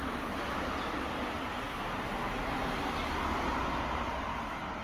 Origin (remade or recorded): recorded